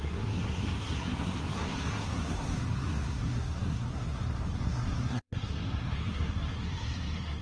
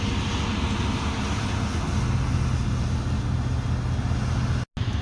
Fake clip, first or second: first